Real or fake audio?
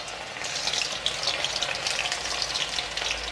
real